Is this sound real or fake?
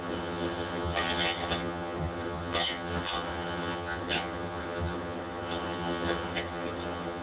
fake